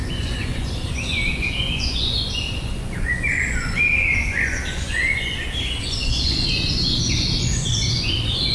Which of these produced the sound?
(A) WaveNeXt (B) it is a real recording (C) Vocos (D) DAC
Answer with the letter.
C